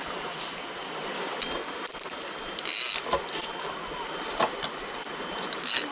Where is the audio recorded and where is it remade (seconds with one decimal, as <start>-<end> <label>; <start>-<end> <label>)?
0.0-5.9 recorded